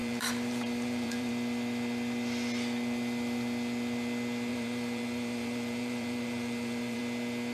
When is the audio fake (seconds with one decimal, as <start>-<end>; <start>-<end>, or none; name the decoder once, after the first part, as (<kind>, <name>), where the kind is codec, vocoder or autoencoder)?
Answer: 0.0-1.3 (vocoder, BigVGAN v2); 4.5-7.0